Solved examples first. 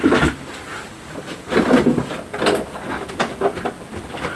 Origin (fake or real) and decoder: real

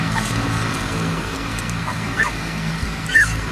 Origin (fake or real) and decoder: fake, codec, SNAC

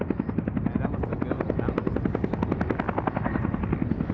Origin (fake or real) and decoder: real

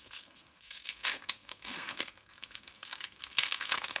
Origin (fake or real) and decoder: fake, codec, SNAC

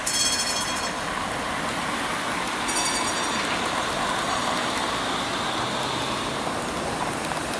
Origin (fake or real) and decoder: real